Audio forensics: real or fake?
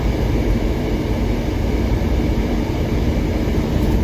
real